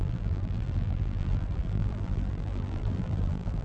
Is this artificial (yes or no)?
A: yes